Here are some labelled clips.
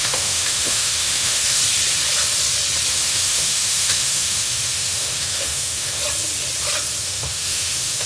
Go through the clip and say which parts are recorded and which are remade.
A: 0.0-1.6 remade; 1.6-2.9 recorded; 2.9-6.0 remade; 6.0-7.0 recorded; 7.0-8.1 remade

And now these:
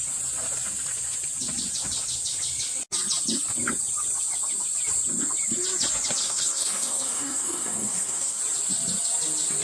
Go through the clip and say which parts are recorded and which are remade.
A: 0.0-6.2 recorded; 6.2-8.4 remade; 8.4-9.6 recorded

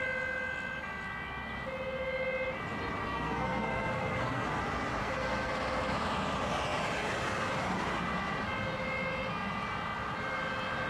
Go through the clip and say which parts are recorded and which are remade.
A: 0.0-3.0 recorded; 3.0-4.6 remade; 4.6-5.0 recorded; 5.0-5.5 remade; 5.5-10.9 recorded